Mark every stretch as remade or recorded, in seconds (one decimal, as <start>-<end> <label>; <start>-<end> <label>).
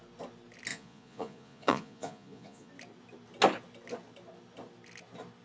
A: 0.0-0.7 recorded; 0.7-2.7 remade; 2.7-5.4 recorded